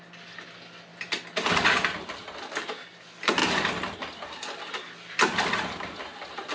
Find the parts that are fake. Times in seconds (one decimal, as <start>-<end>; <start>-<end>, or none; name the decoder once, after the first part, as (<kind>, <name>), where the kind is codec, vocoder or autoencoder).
none